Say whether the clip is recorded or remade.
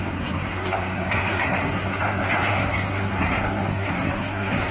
remade